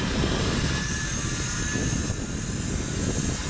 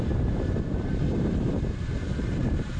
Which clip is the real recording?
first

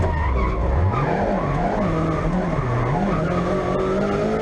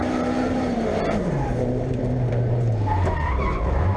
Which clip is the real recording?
first